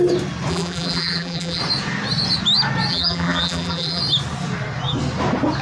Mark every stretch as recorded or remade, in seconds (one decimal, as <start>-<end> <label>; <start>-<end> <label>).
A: 0.0-0.5 recorded; 0.5-1.6 remade; 1.6-2.9 recorded; 2.9-4.0 remade; 4.0-5.6 recorded